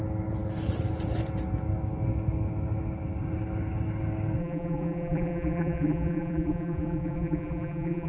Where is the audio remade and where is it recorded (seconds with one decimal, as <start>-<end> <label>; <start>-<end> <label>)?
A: 0.0-4.4 recorded; 4.4-8.1 remade

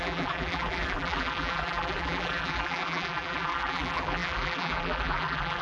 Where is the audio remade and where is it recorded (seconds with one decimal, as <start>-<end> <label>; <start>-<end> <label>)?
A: 0.0-5.6 remade

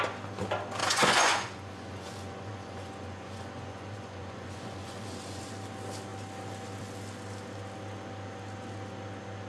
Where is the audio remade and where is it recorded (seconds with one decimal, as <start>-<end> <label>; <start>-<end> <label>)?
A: 0.0-0.8 recorded; 0.8-5.5 remade; 5.5-9.5 recorded